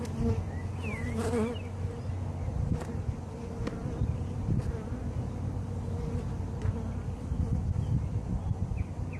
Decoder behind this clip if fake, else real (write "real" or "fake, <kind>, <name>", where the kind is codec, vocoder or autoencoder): real